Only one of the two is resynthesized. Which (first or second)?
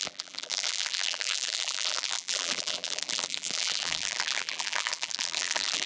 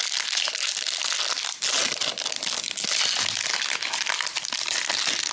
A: first